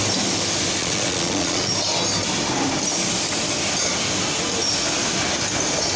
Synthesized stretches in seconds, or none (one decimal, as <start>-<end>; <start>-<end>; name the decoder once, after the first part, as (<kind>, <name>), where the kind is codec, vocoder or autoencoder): 0.8-1.7 (vocoder, Vocos)